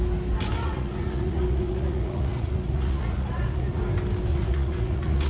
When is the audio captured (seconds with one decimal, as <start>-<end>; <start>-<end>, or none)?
0.0-0.6; 3.8-4.3